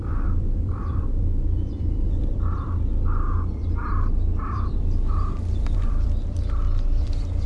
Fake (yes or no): yes